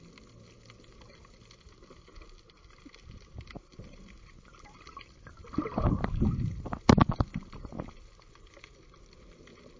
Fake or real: real